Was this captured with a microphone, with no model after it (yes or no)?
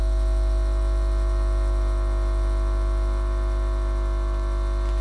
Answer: yes